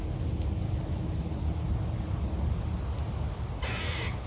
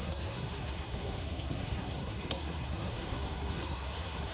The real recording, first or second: first